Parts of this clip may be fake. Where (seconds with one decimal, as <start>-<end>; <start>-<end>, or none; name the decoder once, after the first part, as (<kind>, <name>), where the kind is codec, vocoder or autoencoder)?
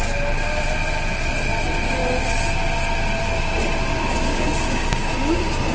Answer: 4.3-5.1 (codec, DAC)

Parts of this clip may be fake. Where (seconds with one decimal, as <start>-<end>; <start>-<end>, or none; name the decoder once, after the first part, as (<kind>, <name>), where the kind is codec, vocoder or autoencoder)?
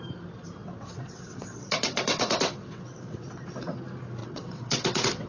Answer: 0.6-3.8 (vocoder, WaveNeXt); 4.2-5.3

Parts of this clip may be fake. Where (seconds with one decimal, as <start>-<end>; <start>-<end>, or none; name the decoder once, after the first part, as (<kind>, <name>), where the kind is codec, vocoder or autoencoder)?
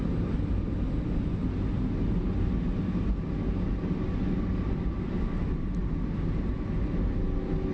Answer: none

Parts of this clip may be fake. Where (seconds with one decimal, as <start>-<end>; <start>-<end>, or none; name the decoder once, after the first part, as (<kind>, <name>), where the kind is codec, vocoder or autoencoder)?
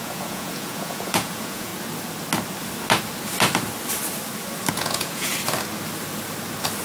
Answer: 0.0-1.7 (vocoder, Vocos); 4.7-5.3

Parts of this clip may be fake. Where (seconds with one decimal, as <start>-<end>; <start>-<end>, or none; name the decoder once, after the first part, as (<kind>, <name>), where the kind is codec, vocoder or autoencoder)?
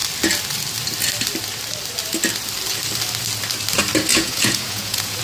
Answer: 4.1-5.2 (vocoder, Vocos)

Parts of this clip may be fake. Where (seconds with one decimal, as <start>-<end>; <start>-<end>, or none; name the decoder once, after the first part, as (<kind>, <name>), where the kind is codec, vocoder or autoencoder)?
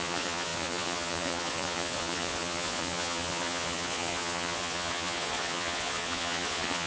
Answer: 0.0-6.9 (vocoder, Vocos)